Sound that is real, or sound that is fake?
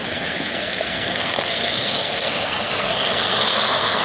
fake